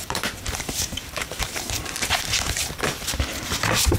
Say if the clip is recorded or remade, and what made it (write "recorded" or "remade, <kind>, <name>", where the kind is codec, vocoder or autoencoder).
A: remade, vocoder, BigVGAN v2